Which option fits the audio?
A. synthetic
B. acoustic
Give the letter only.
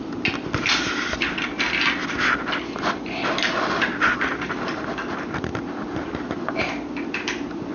B